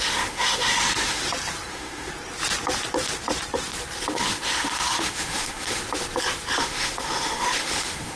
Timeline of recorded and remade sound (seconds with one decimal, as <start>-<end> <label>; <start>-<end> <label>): 0.0-1.2 remade; 1.2-1.7 recorded; 1.7-2.1 remade; 2.1-4.1 recorded; 4.1-5.8 remade; 5.8-6.6 recorded; 6.6-8.2 remade